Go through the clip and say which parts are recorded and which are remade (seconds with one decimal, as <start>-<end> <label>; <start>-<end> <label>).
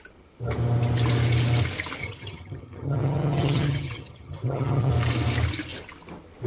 0.0-2.0 recorded; 2.0-4.9 remade; 4.9-6.5 recorded